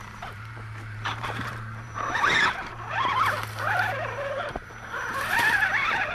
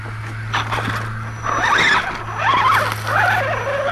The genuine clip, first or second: second